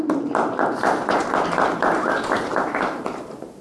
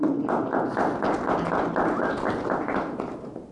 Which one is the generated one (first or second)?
first